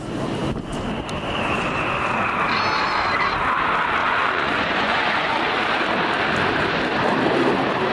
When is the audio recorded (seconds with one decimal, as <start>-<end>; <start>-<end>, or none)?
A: 0.0-4.0; 5.6-7.9

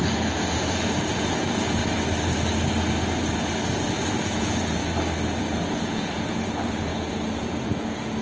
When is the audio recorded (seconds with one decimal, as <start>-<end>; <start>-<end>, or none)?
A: 1.8-4.1; 4.8-5.4

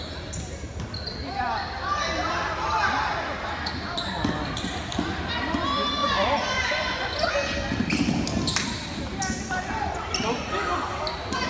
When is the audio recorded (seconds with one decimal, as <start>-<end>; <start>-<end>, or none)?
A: 0.0-6.0; 7.3-11.5

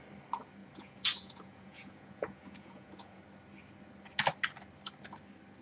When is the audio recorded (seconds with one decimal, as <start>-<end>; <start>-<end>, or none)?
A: 0.0-0.6; 3.2-5.6